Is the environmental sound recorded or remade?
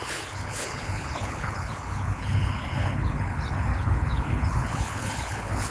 remade